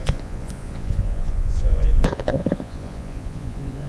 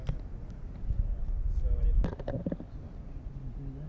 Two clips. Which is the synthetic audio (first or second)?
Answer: first